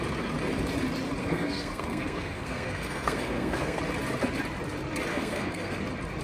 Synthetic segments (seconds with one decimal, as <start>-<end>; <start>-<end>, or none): 1.2-3.8; 5.1-5.8